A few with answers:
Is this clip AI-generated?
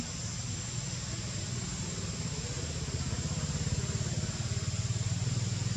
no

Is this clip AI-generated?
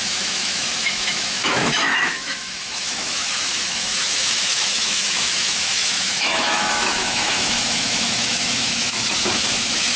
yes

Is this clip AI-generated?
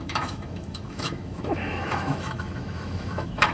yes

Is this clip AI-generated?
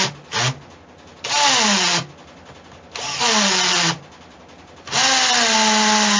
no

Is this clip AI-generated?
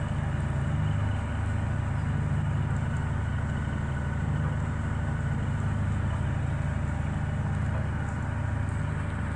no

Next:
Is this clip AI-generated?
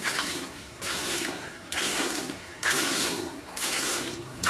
yes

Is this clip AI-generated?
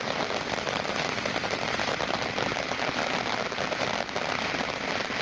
no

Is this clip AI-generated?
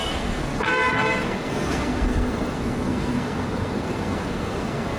yes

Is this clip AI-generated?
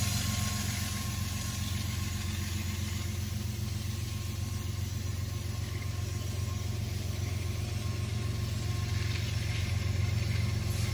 no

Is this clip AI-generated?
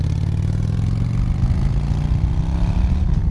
no